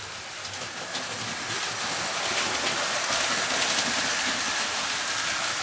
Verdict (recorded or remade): recorded